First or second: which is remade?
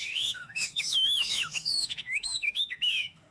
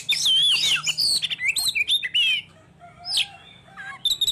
first